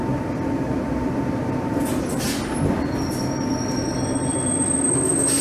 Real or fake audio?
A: real